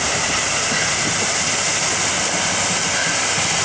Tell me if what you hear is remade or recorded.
recorded